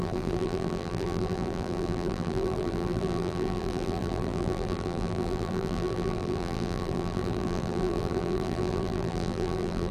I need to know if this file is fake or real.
fake